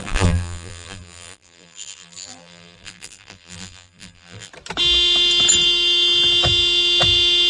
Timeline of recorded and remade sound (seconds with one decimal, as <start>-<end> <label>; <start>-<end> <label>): 0.0-4.5 remade; 4.5-7.5 recorded